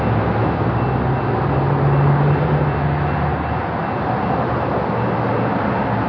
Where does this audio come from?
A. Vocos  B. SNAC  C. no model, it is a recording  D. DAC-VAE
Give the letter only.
C